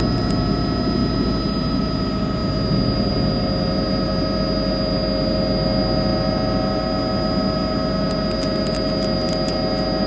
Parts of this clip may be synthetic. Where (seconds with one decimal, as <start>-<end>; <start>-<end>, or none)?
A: none